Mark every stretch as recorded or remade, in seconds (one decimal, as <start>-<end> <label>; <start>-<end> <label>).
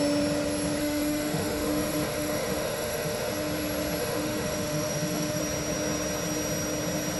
0.0-0.8 recorded; 0.8-3.3 remade; 3.3-4.0 recorded; 4.0-5.4 remade; 5.4-7.2 recorded